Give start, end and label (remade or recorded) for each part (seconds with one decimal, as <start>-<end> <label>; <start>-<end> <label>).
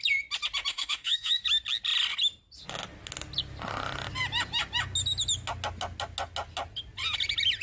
0.0-0.7 recorded; 0.7-1.4 remade; 1.4-7.6 recorded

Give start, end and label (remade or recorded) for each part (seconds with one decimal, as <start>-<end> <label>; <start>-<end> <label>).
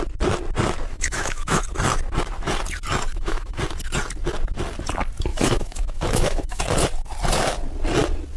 0.0-0.9 recorded; 0.9-1.6 remade; 1.6-3.1 recorded; 3.1-3.6 remade; 3.6-5.3 recorded; 5.3-6.6 remade; 6.6-8.4 recorded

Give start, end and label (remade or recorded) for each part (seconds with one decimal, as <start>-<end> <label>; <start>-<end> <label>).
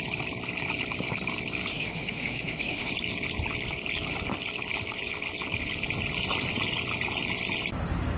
0.0-1.7 recorded; 1.7-2.9 remade; 2.9-8.2 recorded